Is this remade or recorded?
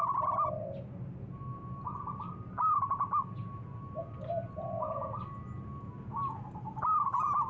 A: recorded